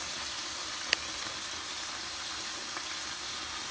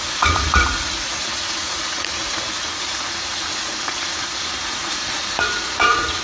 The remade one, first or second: second